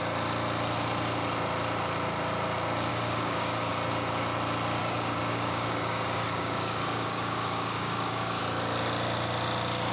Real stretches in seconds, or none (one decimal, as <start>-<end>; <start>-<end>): 0.0-2.9; 3.7-4.8; 8.4-9.9